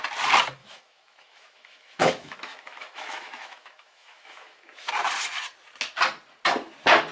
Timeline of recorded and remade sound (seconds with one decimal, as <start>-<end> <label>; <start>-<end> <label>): 0.0-0.6 recorded; 0.6-4.9 remade; 4.9-7.1 recorded